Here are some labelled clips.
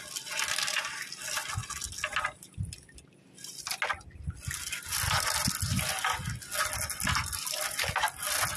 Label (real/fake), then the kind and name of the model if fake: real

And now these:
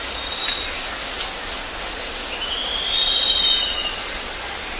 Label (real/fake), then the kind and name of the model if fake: real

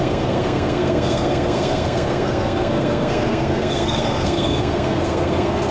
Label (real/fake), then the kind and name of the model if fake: fake, codec, SNAC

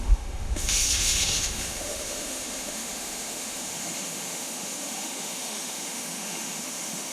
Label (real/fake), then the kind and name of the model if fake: fake, autoencoder, DAC-VAE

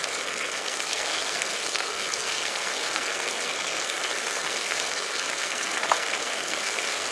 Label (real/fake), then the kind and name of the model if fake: fake, codec, SNAC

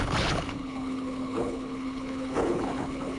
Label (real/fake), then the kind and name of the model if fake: fake, codec, HILCodec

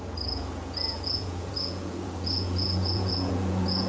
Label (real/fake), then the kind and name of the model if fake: fake, vocoder, Vocos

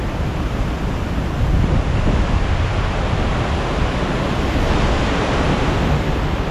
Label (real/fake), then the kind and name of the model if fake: real